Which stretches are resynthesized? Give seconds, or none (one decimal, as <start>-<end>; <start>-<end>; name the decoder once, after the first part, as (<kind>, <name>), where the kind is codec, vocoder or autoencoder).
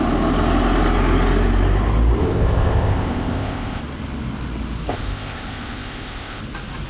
2.2-3.8 (codec, ZipCodec); 4.9-6.4